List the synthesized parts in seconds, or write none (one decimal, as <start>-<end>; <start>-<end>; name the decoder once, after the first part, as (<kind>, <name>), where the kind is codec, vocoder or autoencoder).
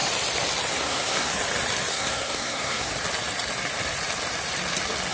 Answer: 0.7-1.3 (codec, SNAC); 1.9-2.9